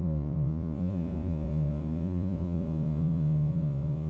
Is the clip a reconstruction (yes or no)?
yes